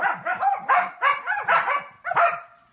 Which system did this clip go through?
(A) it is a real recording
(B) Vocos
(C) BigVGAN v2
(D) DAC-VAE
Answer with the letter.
A